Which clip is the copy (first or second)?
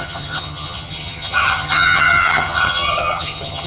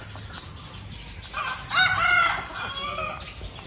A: first